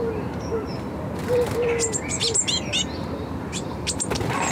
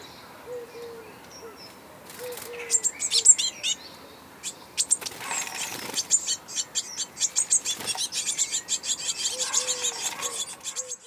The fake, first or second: first